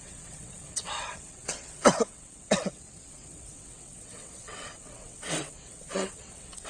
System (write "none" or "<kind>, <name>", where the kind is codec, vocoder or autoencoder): vocoder, WaveNeXt